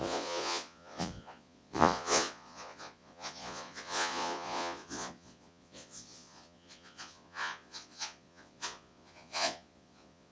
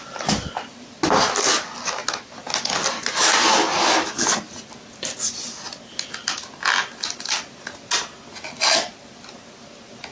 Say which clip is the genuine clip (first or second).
second